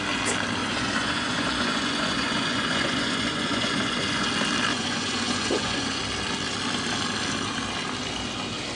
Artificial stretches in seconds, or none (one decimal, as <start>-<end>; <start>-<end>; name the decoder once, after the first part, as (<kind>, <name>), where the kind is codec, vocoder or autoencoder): 0.6-4.3 (vocoder, Vocos); 4.7-6.0